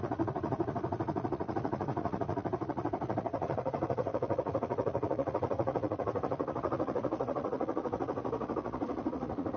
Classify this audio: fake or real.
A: fake